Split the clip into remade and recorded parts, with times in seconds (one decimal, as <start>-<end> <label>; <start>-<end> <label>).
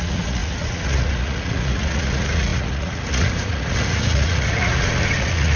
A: 0.0-5.6 remade